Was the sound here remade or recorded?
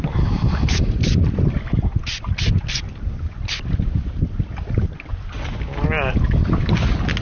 recorded